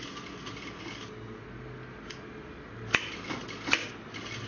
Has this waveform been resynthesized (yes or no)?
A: no